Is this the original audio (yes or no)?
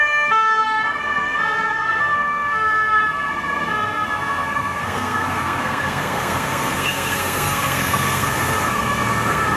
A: no